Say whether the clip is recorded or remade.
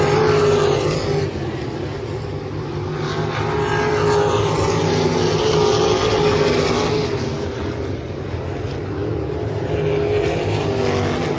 recorded